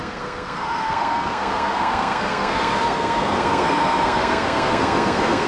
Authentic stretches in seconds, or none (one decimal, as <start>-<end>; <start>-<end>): none